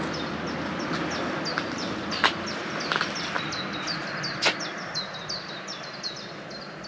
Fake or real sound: real